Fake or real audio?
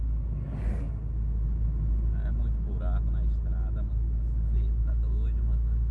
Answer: real